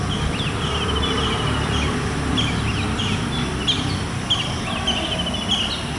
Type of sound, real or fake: real